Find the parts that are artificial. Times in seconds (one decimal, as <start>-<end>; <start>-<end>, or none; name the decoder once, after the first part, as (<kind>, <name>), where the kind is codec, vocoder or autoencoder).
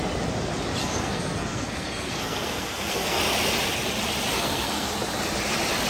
0.8-3.2 (codec, SNAC); 4.3-4.9